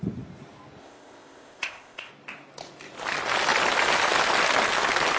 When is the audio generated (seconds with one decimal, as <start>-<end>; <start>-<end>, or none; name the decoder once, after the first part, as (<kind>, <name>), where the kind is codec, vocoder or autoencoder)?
0.8-2.1 (codec, ZipCodec)